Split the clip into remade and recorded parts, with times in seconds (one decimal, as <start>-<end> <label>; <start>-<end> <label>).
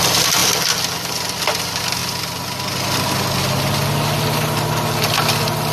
0.0-5.7 recorded